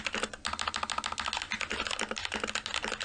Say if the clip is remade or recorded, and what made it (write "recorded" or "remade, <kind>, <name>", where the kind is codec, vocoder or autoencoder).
recorded